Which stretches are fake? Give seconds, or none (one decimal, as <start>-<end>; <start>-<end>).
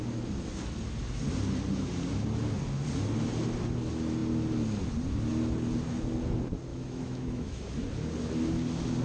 6.7-7.6